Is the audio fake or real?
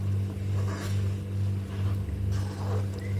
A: real